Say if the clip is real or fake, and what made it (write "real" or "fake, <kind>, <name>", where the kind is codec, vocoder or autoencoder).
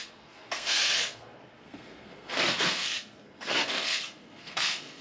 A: fake, codec, SNAC